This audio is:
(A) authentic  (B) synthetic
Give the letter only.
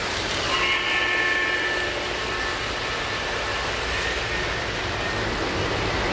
A